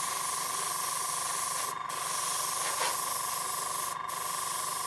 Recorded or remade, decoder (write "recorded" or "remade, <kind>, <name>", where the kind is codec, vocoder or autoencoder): remade, vocoder, BigVGAN v2